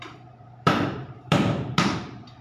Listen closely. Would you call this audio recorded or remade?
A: remade